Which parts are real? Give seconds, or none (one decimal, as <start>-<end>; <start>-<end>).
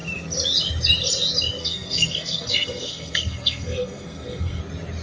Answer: 0.0-1.6; 4.6-5.0